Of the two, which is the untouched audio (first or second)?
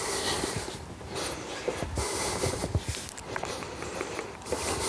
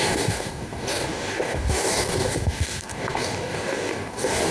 first